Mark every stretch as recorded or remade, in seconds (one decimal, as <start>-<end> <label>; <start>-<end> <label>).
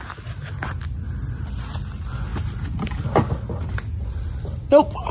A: 0.0-5.1 recorded